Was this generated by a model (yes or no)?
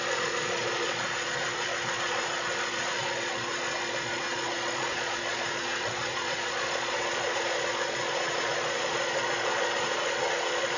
yes